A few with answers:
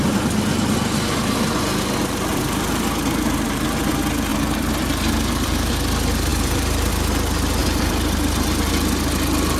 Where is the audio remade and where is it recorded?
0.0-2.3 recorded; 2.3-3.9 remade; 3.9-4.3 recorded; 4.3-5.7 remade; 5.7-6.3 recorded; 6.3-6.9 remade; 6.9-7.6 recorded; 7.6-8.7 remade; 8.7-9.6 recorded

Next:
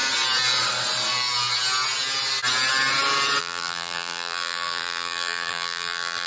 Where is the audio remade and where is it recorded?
0.0-3.4 recorded; 3.4-6.3 remade

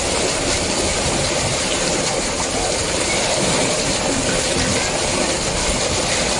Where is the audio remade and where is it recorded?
0.0-0.9 recorded; 0.9-4.1 remade; 4.1-6.4 recorded

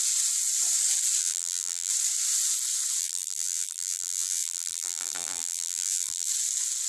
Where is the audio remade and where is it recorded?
0.0-1.2 recorded; 1.2-1.9 remade; 1.9-3.0 recorded; 3.0-6.3 remade; 6.3-6.9 recorded